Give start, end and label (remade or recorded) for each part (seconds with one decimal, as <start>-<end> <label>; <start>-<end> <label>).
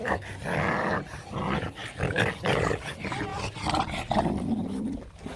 0.0-5.4 recorded